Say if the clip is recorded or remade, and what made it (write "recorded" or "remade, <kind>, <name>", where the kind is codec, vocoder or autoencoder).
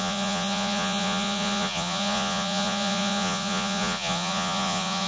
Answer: remade, vocoder, Vocos